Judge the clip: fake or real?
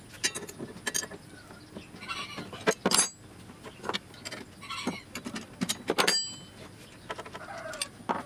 real